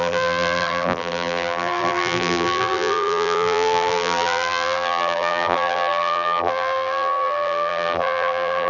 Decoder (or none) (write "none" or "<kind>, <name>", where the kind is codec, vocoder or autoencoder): vocoder, BigVGAN v2